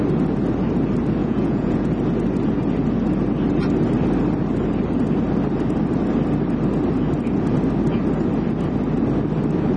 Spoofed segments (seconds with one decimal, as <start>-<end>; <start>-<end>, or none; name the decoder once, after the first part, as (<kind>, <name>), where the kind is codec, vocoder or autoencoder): 1.2-1.9 (vocoder, Vocos)